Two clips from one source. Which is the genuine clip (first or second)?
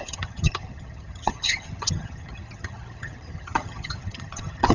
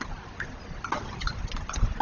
second